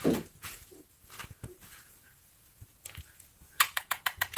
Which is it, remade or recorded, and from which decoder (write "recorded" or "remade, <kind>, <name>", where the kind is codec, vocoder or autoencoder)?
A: remade, vocoder, Vocos